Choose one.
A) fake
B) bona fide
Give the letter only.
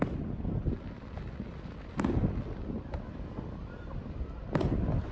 B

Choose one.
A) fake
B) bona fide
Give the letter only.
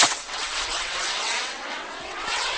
A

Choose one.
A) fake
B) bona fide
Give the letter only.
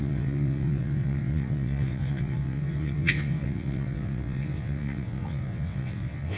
A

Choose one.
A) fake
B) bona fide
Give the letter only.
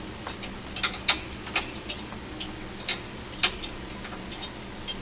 B